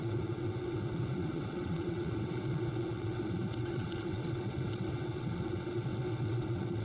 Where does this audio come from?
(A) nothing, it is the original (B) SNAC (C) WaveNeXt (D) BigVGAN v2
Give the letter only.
C